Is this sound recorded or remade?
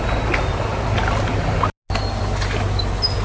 recorded